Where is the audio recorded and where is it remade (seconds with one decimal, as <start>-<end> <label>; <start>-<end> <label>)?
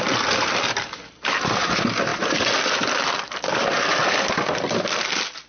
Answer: 0.0-5.5 recorded